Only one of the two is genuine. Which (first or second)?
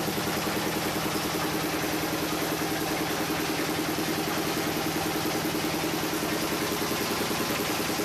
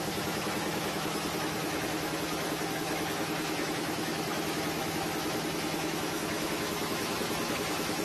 first